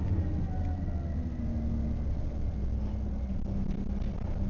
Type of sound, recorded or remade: recorded